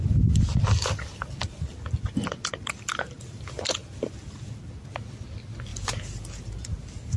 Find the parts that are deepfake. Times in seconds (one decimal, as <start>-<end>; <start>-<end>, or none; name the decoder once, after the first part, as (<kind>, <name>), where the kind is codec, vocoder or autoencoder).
none